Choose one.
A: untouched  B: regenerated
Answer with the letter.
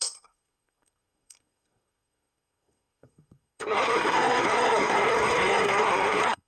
B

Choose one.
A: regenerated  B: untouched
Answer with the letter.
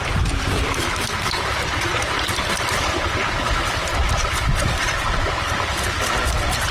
B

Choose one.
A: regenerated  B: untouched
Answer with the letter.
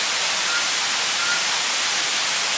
B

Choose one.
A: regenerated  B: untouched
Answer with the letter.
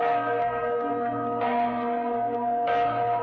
A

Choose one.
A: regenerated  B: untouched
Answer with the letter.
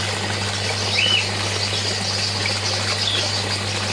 B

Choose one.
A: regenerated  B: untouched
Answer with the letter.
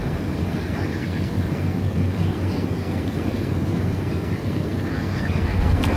A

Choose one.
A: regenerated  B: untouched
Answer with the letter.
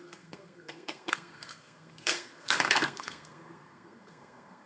A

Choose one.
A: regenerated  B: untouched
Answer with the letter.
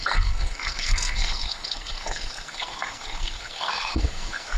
A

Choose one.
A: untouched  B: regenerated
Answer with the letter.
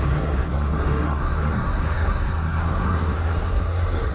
B